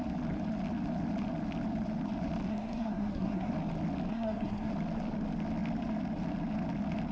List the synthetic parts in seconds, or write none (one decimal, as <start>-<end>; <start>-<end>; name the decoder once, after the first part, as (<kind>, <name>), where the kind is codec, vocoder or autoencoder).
2.5-3.5 (codec, SNAC); 4.1-4.7